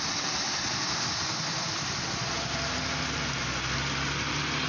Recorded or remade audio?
recorded